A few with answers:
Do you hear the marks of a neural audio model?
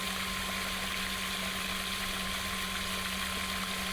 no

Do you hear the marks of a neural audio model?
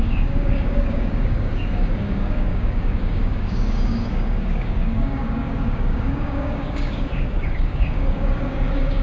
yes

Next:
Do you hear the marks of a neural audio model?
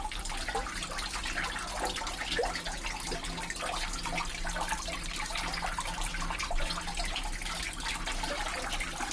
no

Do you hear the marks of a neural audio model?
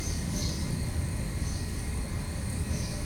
yes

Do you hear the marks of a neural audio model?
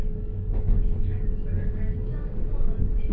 yes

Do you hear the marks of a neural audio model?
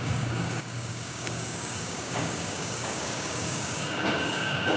yes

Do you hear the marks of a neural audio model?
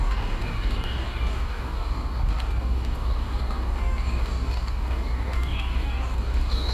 yes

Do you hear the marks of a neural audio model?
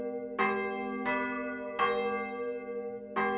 no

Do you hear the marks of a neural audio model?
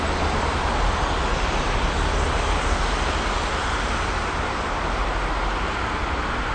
no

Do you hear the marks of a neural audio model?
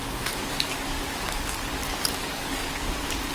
yes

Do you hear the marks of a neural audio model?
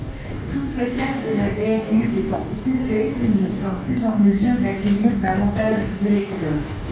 yes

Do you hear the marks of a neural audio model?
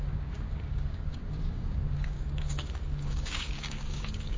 yes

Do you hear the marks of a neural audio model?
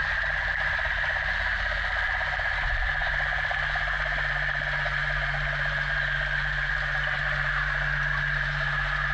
no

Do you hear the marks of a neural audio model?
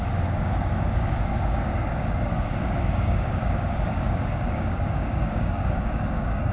yes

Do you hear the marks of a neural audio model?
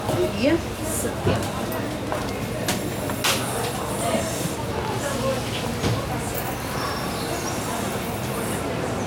no